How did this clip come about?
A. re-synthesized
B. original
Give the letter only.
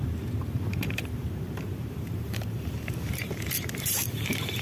A